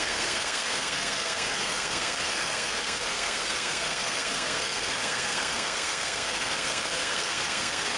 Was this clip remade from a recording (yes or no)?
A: yes